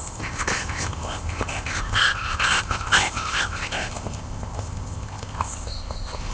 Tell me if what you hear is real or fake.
fake